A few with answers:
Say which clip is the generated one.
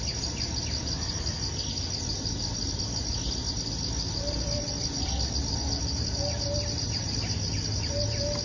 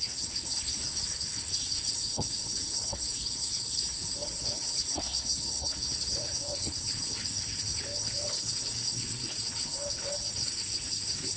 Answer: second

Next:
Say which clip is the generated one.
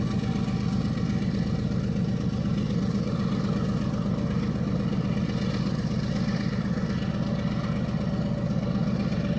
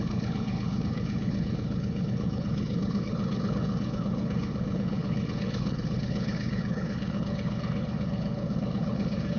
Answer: second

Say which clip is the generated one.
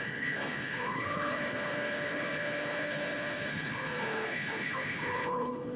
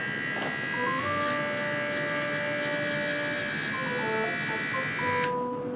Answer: first